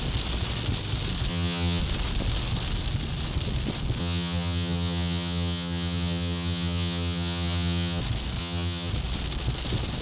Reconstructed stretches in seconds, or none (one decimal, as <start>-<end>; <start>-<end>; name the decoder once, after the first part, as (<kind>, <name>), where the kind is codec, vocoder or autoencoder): 1.3-1.8 (vocoder, HiFi-GAN); 4.0-8.0; 8.4-8.9

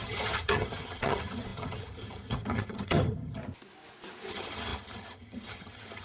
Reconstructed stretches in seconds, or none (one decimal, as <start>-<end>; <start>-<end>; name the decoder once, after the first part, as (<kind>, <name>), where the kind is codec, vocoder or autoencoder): 0.0-3.4 (vocoder, HiFi-GAN); 4.3-6.0

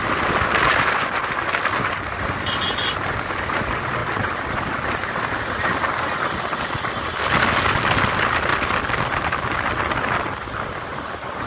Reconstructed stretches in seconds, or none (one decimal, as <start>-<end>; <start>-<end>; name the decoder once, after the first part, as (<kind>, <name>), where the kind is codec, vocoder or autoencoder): none

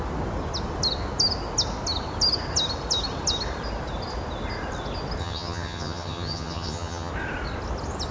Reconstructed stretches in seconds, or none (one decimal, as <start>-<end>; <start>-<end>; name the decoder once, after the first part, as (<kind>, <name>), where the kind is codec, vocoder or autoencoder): 5.2-7.1 (vocoder, HiFi-GAN)

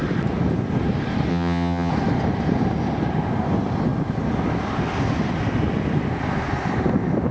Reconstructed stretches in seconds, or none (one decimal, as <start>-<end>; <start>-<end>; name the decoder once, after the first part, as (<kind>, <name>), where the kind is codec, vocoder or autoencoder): 1.3-1.9 (vocoder, HiFi-GAN)